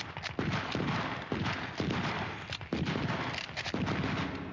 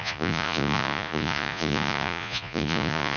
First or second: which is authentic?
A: first